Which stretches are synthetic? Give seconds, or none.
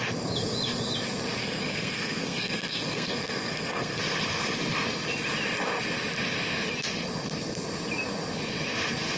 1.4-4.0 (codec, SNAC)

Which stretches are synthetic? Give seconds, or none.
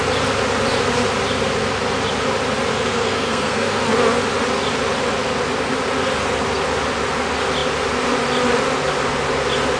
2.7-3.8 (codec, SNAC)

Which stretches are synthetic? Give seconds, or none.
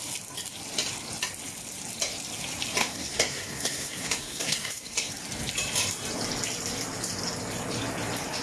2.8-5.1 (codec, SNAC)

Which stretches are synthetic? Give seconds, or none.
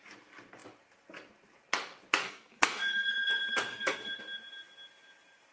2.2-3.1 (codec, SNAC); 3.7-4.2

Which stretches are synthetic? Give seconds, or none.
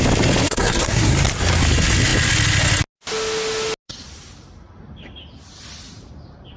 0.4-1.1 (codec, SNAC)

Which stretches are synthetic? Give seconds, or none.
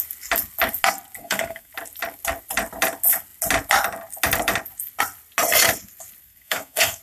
1.2-1.7 (codec, SNAC); 6.2-7.0